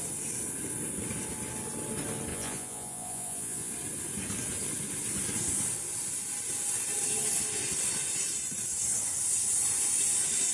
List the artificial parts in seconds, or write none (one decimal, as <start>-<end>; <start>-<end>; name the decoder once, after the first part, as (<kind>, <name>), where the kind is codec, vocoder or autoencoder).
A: 2.3-3.7 (vocoder, Vocos)

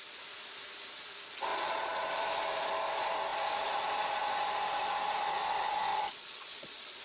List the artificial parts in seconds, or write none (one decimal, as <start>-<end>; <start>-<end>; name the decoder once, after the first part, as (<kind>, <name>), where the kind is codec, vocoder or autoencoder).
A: 1.5-2.1 (vocoder, Vocos); 5.9-7.0